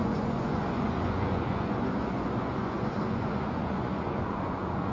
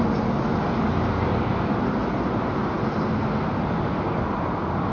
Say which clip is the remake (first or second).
first